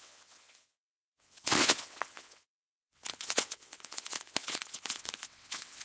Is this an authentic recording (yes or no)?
no